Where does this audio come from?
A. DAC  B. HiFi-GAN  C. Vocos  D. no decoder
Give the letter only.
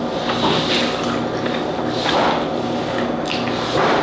D